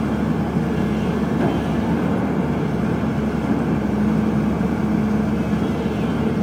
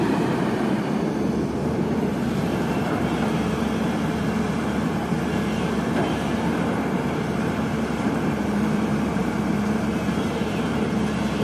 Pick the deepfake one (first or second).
second